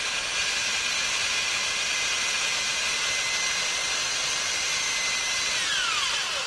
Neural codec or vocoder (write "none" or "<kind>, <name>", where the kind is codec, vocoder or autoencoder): none